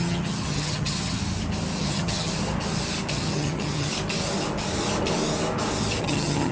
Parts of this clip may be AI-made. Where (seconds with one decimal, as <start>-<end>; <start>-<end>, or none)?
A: 0.0-1.2; 1.8-2.3; 3.1-3.9; 6.0-6.5